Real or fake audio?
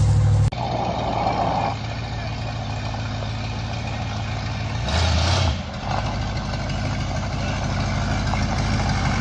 real